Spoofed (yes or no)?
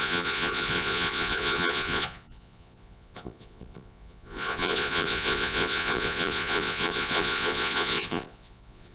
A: yes